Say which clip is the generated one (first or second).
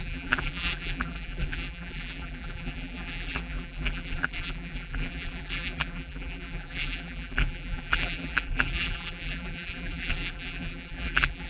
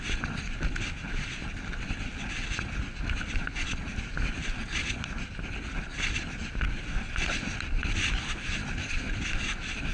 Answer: first